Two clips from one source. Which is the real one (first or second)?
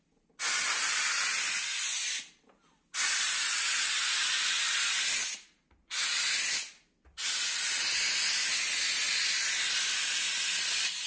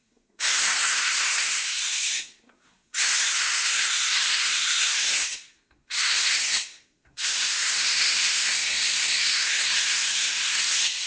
first